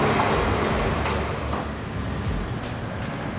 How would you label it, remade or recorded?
recorded